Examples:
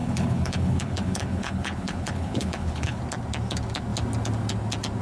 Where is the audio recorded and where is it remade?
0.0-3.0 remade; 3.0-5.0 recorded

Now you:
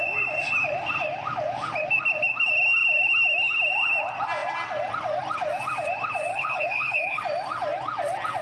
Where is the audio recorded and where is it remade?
0.0-6.3 recorded; 6.3-7.2 remade; 7.2-8.4 recorded

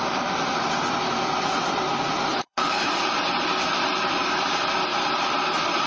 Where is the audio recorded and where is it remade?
0.0-2.3 recorded; 2.3-2.9 remade; 2.9-5.9 recorded

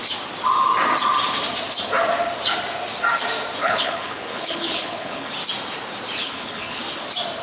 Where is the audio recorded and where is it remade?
0.0-3.6 recorded; 3.6-5.3 remade; 5.3-6.2 recorded; 6.2-6.8 remade; 6.8-7.4 recorded